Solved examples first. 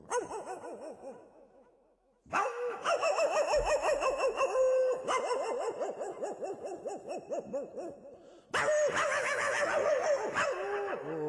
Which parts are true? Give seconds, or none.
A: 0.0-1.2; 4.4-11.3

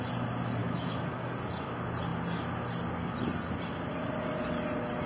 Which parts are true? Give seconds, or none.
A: 0.0-0.6; 1.3-5.1

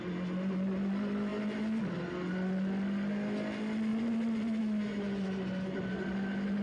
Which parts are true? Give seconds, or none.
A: 0.0-6.6

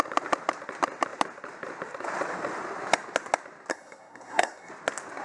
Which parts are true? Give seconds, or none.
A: 0.0-3.7; 4.7-5.2

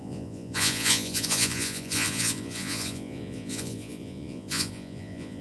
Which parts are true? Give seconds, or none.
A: none

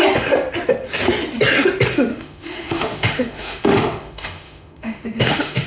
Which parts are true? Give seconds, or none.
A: 0.0-2.1

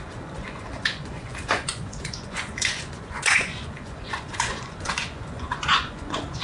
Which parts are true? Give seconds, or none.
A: none